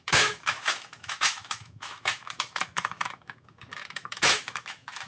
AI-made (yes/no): yes